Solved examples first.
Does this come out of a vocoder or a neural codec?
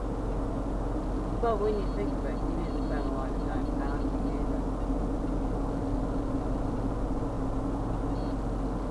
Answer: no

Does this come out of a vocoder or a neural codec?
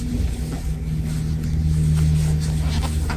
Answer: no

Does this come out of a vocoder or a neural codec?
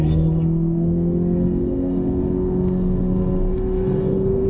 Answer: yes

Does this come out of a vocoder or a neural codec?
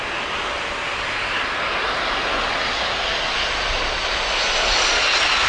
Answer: no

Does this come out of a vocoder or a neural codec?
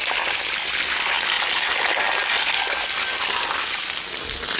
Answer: no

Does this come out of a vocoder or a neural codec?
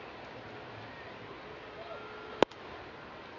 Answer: no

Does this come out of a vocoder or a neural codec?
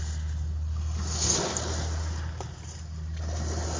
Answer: no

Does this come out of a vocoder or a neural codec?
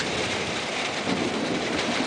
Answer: yes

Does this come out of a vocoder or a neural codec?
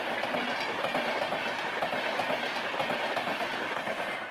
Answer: no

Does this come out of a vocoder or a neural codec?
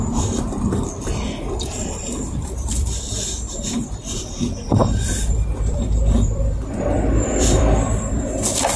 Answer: yes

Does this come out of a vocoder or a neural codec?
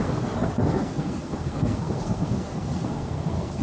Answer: yes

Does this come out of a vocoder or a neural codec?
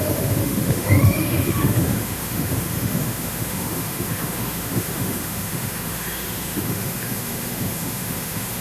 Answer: yes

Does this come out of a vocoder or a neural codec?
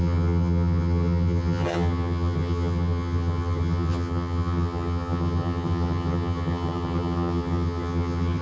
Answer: yes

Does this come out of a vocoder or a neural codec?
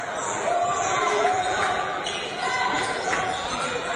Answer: yes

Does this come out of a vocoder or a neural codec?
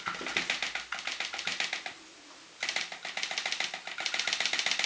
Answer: no